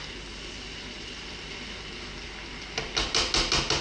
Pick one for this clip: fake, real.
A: real